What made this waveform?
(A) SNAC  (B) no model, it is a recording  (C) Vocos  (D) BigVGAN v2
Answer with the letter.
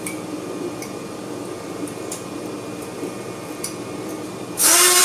D